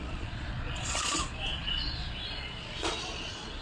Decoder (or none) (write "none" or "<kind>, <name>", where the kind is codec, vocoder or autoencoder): vocoder, Vocos